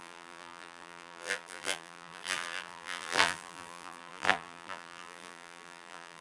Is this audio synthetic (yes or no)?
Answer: yes